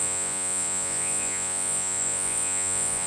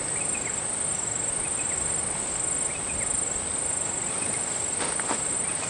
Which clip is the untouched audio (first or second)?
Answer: second